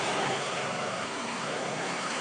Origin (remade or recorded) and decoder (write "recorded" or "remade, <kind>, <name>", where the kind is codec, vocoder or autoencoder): remade, codec, SNAC